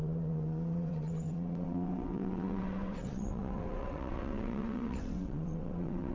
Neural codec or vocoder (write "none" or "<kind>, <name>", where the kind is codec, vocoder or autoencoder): vocoder, WaveNeXt